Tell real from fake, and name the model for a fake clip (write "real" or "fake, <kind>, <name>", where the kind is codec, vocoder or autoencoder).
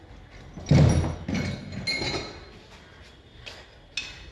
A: real